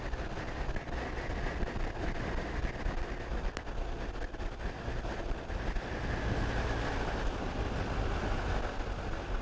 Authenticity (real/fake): real